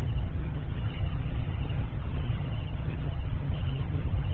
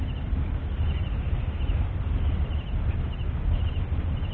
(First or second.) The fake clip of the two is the first